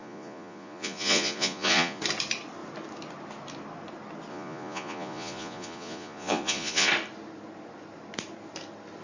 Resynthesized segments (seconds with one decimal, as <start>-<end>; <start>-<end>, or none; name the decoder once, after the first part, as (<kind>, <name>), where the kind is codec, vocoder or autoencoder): 0.0-2.0 (vocoder, Vocos); 4.3-6.9